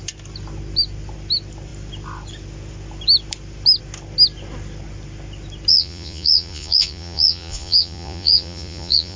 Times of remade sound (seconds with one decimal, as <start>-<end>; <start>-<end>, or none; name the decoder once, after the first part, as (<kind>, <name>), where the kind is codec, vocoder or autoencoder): 5.7-9.2 (vocoder, Vocos)